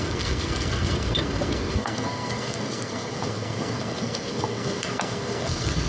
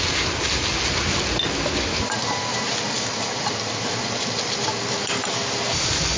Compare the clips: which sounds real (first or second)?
second